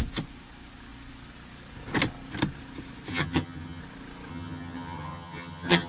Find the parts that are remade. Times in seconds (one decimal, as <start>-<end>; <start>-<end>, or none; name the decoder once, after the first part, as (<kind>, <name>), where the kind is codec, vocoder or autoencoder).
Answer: 3.1-3.8 (vocoder, HiFi-GAN); 4.3-5.9